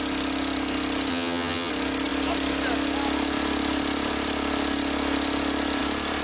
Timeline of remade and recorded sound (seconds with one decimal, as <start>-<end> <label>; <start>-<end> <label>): 0.0-1.1 recorded; 1.1-1.7 remade; 1.7-6.2 recorded